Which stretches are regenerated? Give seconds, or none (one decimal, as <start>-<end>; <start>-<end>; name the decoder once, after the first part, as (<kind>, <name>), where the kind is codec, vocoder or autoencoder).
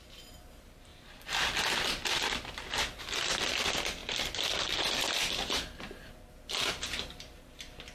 0.9-3.4 (vocoder, BigVGAN v2); 4.0-7.0